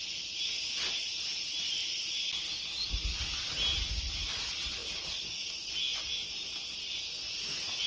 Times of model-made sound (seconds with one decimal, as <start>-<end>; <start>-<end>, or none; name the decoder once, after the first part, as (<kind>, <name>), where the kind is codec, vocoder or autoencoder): none